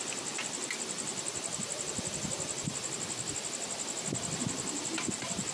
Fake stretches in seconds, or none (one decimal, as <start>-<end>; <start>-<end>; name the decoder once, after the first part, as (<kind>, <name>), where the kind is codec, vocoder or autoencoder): 0.0-1.1 (vocoder, BigVGAN v2); 4.4-5.5